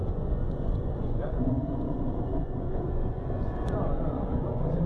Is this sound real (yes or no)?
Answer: no